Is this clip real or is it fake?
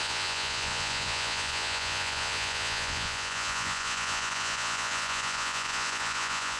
fake